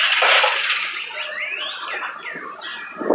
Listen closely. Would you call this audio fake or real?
real